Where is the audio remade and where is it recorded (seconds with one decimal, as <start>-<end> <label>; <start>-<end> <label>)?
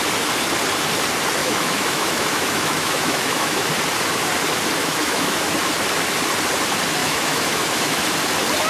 0.0-1.4 recorded; 1.4-3.7 remade; 3.7-4.8 recorded; 4.8-5.5 remade; 5.5-7.0 recorded; 7.0-8.0 remade; 8.0-8.7 recorded